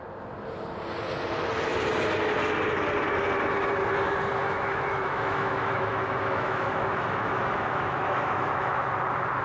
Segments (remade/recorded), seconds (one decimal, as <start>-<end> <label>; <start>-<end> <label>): 0.0-4.4 recorded; 4.4-8.8 remade; 8.8-9.4 recorded